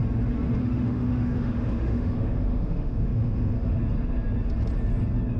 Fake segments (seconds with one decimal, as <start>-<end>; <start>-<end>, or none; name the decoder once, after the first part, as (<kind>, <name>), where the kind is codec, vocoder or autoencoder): 0.6-3.8 (autoencoder, DAC-VAE)